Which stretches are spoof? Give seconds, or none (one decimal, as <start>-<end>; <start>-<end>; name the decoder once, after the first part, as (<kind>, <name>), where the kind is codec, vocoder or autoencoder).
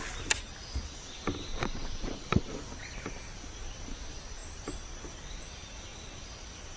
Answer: 1.5-2.5 (vocoder, Vocos)